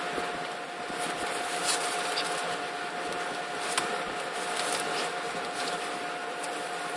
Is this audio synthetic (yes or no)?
no